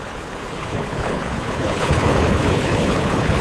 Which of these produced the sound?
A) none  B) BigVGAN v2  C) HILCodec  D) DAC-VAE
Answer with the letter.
C